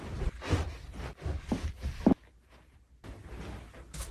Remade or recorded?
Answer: recorded